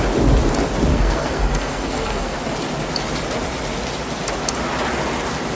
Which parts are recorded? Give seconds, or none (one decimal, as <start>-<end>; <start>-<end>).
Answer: 0.0-0.9; 2.4-5.5